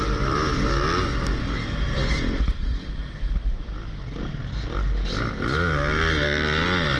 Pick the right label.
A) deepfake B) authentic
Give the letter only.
B